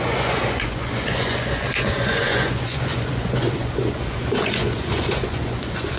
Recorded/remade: remade